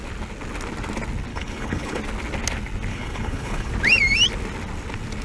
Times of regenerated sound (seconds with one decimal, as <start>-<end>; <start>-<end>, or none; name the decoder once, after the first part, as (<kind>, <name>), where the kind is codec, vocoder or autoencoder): 1.3-2.0 (codec, HILCodec); 2.9-3.7